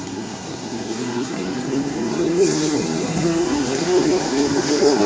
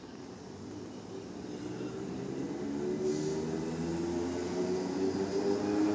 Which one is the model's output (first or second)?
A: first